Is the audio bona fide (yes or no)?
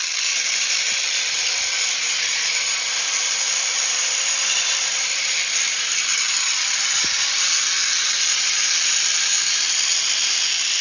yes